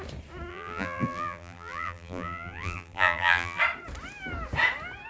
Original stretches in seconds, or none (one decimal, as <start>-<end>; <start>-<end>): 0.0-0.5; 3.6-5.1